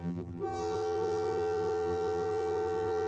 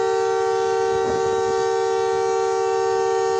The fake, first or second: first